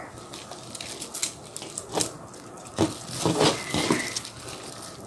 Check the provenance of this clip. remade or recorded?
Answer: recorded